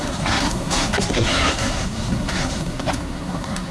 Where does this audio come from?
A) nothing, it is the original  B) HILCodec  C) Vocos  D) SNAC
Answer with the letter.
D